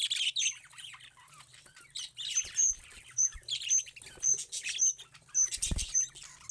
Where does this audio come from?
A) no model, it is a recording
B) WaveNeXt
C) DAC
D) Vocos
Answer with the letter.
A